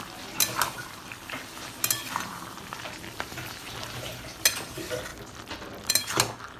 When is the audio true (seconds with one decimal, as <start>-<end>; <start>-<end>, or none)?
0.0-6.6

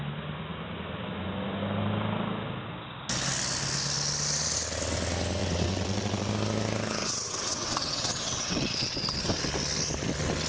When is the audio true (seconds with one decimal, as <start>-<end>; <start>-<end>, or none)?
0.0-5.4; 6.3-7.0; 9.4-10.5

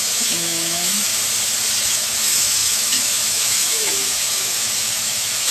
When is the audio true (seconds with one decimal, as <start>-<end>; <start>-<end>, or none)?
1.1-1.8

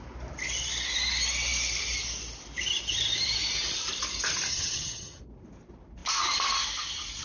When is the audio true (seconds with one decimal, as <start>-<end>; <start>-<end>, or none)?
0.0-4.5; 5.2-7.2

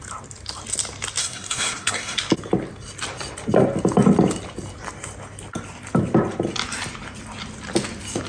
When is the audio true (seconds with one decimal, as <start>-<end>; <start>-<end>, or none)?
0.0-1.2; 2.2-8.3

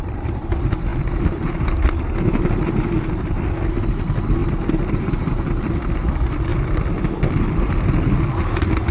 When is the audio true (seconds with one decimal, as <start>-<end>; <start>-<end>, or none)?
0.0-8.9

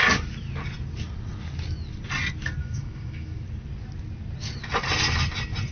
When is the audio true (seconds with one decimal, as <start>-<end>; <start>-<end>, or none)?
0.0-2.6; 3.4-5.7

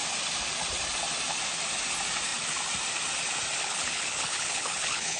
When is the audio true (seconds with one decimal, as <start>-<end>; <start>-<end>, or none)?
0.0-3.6